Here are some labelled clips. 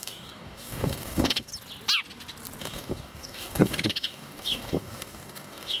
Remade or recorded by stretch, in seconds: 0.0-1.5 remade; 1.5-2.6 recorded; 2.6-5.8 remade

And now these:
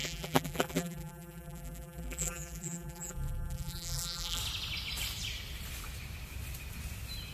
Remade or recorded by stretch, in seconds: 0.0-4.4 remade; 4.4-7.3 recorded

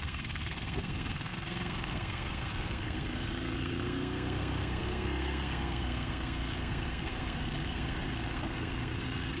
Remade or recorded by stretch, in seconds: 0.0-9.4 remade

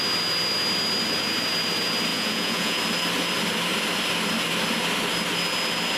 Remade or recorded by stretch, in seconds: 0.0-2.1 recorded; 2.1-2.8 remade; 2.8-6.0 recorded

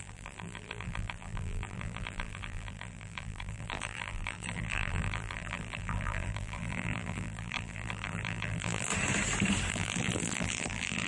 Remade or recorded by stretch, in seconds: 0.0-8.9 remade; 8.9-9.7 recorded; 9.7-11.1 remade

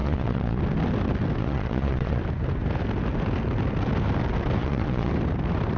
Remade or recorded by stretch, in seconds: 0.0-0.6 remade; 0.6-1.4 recorded; 1.4-2.2 remade; 2.2-4.6 recorded; 4.6-5.1 remade; 5.1-5.8 recorded